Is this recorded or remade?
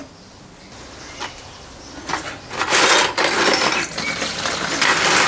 recorded